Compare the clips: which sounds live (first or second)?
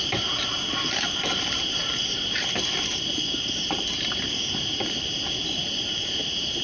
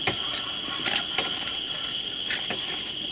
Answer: second